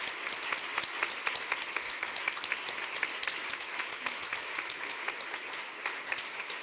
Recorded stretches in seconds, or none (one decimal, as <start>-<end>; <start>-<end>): 0.0-1.8; 2.5-3.5; 5.0-6.6